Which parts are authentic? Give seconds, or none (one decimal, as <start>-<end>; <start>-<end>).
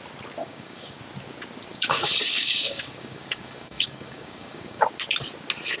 0.0-0.4; 1.0-1.7; 4.8-5.8